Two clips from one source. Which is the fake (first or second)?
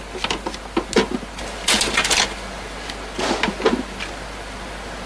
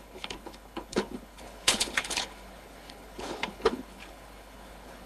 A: second